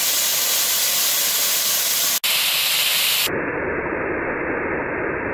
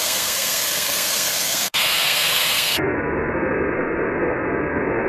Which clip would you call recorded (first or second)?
first